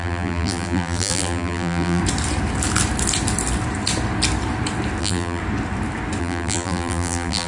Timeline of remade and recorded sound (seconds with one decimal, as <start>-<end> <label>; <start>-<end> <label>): 0.0-2.0 remade; 2.0-5.0 recorded; 5.0-5.4 remade; 5.4-6.2 recorded; 6.2-7.5 remade